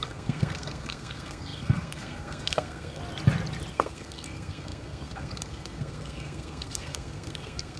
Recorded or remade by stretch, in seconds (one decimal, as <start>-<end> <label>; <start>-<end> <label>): 0.0-3.0 remade; 3.0-3.7 recorded; 3.7-7.8 remade